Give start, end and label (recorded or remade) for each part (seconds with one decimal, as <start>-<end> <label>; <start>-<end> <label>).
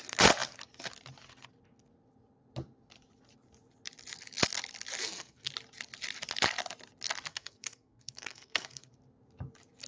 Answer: 0.0-5.0 recorded; 5.0-5.5 remade; 5.5-7.3 recorded; 7.3-8.9 remade; 8.9-9.9 recorded